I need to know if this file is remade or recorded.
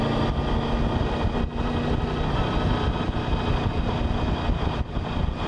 recorded